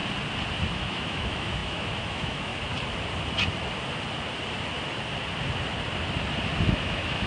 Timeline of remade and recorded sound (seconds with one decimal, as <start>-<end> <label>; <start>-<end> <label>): 0.0-0.7 recorded; 0.7-2.5 remade; 2.5-6.6 recorded; 6.6-7.3 remade